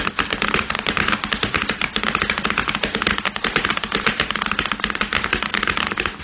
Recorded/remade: recorded